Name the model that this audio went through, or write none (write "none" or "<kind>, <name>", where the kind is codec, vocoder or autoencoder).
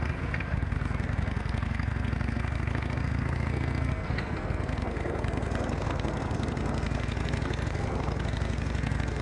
codec, SNAC